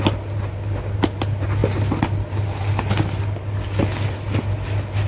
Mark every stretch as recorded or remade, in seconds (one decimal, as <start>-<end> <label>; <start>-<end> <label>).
0.0-5.1 recorded